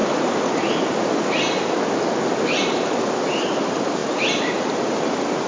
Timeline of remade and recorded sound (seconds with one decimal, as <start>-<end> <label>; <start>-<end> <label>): 0.0-5.5 recorded